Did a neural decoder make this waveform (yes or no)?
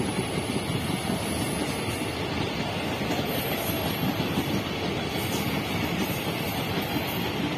no